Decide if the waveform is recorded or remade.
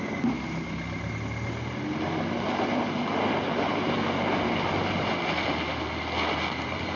recorded